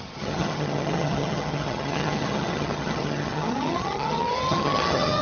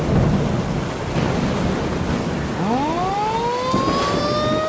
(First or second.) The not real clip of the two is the first